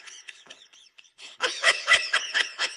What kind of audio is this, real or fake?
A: fake